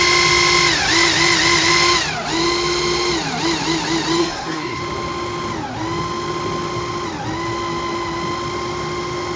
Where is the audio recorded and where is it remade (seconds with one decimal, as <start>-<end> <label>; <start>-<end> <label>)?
0.0-4.2 recorded; 4.2-4.8 remade; 4.8-9.4 recorded